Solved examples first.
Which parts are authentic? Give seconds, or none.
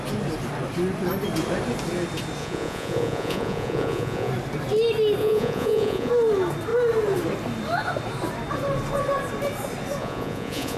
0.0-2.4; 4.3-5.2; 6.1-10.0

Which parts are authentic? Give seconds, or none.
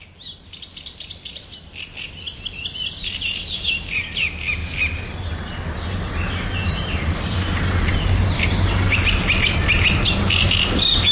0.0-11.1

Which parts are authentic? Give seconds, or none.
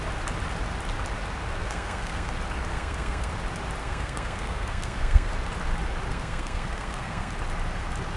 0.0-1.6; 2.3-2.7; 3.3-3.8; 5.3-6.1; 7.3-8.2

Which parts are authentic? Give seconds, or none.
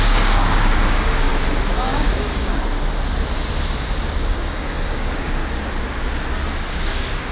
1.3-1.8; 2.5-4.3; 5.4-6.7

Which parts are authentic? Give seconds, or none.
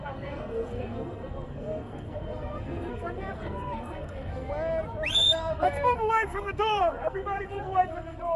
4.5-5.1